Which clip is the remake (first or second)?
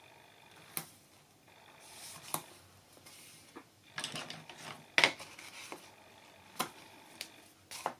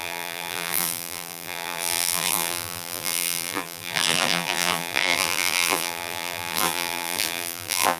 second